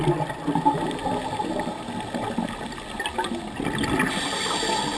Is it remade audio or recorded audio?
recorded